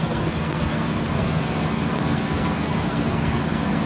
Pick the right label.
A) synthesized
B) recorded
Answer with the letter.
A